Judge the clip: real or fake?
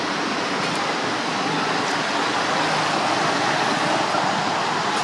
real